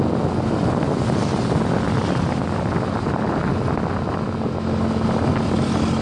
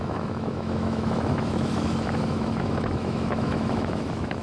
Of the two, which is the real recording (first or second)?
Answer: first